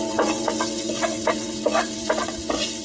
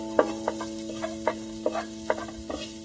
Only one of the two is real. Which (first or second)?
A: second